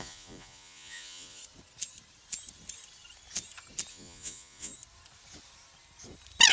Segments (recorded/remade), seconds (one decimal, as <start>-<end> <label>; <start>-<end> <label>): 0.0-1.4 remade; 1.4-3.9 recorded; 3.9-4.7 remade; 4.7-6.5 recorded